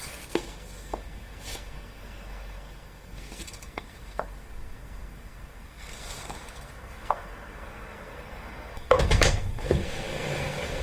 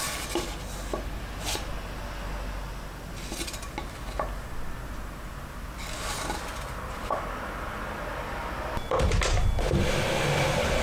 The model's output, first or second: first